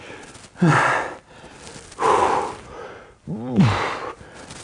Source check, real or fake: real